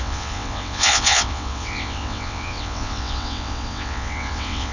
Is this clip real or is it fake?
fake